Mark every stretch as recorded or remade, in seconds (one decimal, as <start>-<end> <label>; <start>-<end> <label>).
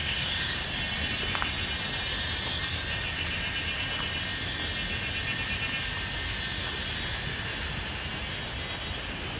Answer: 0.0-0.8 remade; 0.8-9.4 recorded